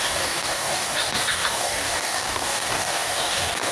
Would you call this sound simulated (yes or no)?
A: yes